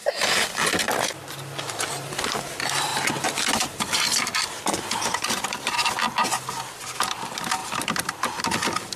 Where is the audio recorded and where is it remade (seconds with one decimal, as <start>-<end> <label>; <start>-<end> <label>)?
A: 0.0-9.0 recorded